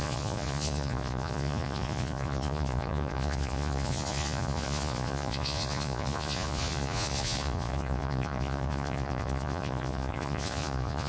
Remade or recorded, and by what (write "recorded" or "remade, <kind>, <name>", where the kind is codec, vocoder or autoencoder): remade, vocoder, Vocos